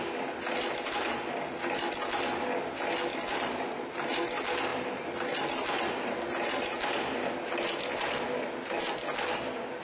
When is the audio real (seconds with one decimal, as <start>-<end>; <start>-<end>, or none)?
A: 0.0-9.8